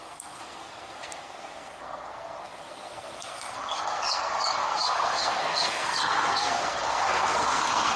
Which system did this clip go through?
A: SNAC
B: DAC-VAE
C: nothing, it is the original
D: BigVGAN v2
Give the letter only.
A